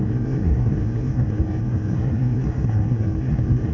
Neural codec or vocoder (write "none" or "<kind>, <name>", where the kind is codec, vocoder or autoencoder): codec, SNAC